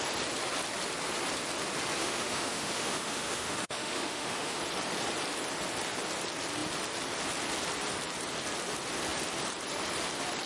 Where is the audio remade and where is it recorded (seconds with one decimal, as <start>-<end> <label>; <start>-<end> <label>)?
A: 0.0-2.0 recorded; 2.0-4.6 remade; 4.6-10.5 recorded